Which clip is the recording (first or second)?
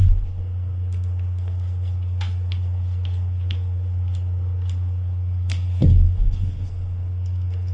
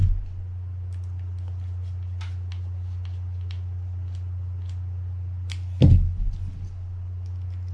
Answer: second